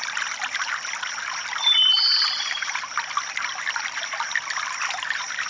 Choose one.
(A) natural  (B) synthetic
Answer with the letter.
A